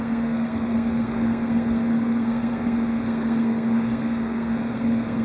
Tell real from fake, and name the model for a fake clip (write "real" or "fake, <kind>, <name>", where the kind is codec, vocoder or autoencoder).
fake, codec, SNAC